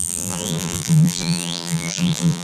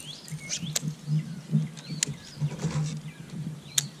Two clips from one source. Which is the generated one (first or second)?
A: first